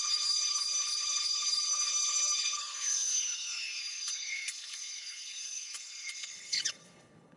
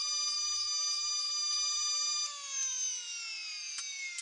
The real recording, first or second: second